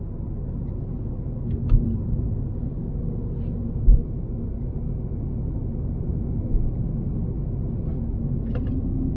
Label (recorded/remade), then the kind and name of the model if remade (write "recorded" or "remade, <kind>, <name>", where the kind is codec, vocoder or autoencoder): recorded